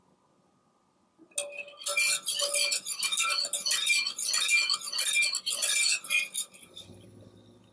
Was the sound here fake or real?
real